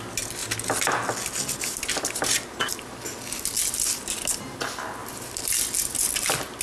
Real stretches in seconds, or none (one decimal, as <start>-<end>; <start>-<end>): 0.0-5.0; 5.5-6.6